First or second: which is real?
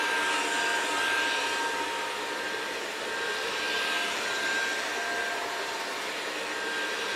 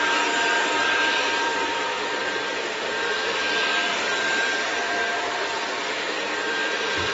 first